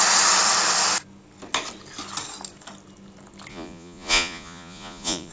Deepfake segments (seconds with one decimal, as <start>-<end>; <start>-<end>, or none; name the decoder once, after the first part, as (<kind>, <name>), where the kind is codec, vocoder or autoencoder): 3.5-5.3 (vocoder, Vocos)